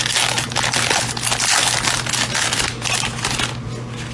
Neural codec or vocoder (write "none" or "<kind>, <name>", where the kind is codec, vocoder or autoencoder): none